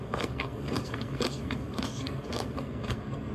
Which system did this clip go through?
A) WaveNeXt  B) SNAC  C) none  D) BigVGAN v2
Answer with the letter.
B